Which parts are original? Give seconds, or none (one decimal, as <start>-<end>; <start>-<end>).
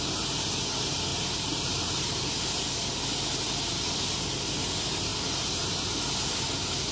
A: 0.0-1.1; 2.2-6.9